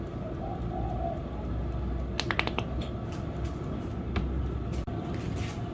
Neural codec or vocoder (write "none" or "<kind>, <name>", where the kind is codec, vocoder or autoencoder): none